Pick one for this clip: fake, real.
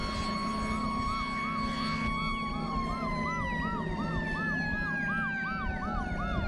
real